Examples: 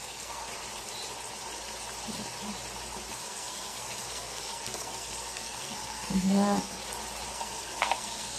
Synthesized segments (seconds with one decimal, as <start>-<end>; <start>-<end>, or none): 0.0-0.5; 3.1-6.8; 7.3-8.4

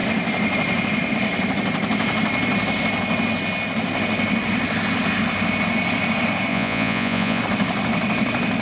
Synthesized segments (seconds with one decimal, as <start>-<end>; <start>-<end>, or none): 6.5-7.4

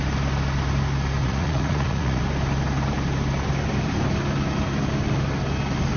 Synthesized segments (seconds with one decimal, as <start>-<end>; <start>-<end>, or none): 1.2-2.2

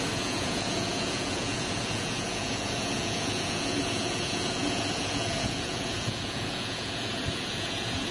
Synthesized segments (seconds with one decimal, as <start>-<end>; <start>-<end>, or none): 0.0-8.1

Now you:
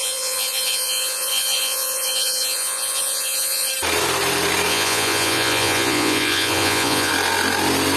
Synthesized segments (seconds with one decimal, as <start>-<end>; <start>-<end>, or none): 0.0-3.7; 4.7-7.1

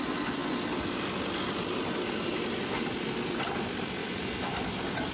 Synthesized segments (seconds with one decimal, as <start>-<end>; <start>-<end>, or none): 4.0-5.1

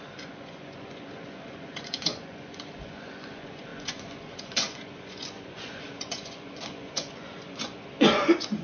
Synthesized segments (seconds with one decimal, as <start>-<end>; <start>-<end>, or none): 0.0-8.6